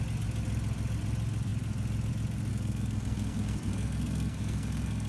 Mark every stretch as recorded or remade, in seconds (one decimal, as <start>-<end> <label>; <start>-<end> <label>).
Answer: 0.0-2.5 recorded; 2.5-5.1 remade